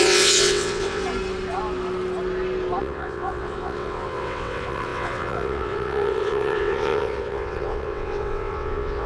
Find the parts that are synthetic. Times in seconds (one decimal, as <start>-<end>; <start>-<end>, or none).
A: 0.0-1.0; 2.8-9.1